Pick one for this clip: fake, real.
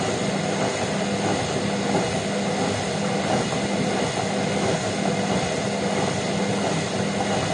real